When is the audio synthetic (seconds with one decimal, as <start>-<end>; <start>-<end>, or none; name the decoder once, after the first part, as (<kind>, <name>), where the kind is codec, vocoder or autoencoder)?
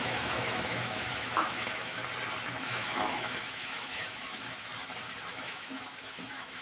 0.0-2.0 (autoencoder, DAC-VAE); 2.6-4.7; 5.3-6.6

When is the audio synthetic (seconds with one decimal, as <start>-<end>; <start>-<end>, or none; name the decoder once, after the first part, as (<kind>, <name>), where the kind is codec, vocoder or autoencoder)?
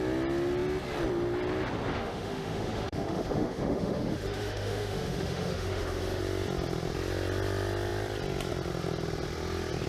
1.9-6.2 (autoencoder, DAC-VAE)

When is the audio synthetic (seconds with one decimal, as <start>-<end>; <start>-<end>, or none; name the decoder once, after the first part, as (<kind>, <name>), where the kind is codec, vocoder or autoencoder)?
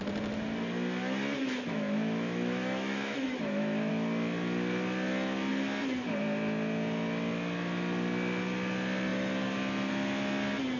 1.4-3.9 (autoencoder, DAC-VAE)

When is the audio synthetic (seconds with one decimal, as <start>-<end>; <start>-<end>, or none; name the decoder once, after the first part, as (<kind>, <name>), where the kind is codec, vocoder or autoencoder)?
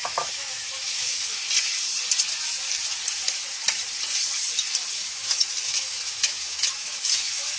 0.0-1.4 (autoencoder, DAC-VAE); 4.9-7.6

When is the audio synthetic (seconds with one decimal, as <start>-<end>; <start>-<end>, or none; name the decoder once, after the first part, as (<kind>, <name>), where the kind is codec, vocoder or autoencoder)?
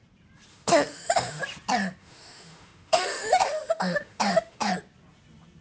0.5-1.4 (autoencoder, DAC-VAE); 2.0-4.7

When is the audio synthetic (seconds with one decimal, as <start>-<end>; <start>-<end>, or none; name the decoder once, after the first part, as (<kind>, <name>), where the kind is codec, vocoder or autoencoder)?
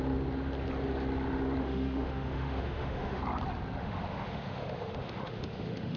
1.6-3.2 (autoencoder, DAC-VAE); 3.8-6.0